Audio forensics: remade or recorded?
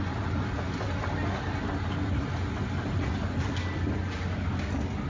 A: recorded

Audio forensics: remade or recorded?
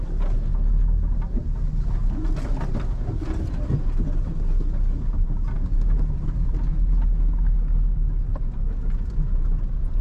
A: recorded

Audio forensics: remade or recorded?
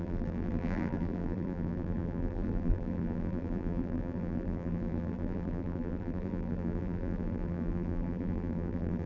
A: remade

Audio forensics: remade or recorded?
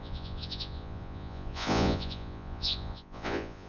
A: remade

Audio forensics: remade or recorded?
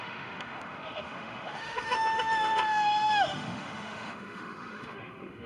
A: remade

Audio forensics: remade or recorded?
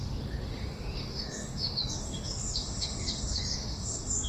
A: remade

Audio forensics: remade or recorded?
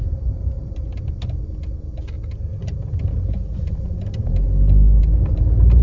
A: recorded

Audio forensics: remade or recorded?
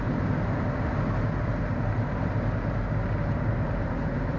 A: recorded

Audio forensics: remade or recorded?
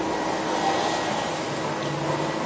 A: recorded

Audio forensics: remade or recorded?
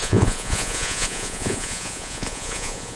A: remade